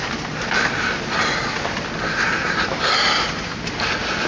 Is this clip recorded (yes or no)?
yes